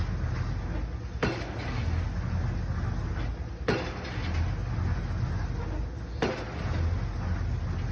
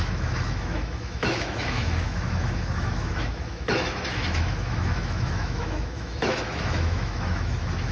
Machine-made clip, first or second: second